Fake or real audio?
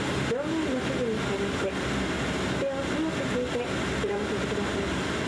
real